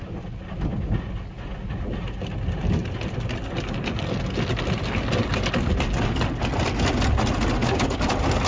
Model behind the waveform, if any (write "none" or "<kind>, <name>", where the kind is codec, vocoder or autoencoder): none